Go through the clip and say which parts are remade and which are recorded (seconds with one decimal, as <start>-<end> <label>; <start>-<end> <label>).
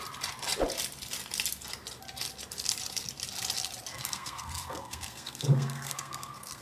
0.0-3.9 recorded; 3.9-6.6 remade